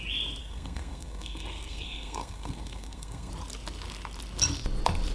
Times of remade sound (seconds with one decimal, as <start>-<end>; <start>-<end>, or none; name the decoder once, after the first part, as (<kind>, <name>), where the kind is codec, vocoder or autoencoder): 0.4-3.3 (codec, SNAC)